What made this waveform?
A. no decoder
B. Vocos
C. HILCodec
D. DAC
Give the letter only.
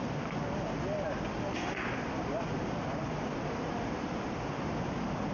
A